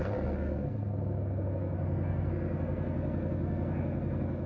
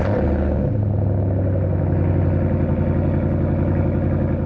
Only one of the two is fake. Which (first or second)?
first